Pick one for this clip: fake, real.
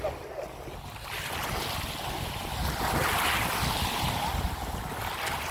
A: real